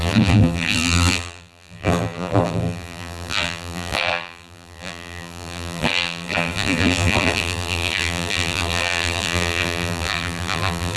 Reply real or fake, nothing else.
fake